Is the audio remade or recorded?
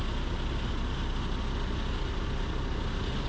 recorded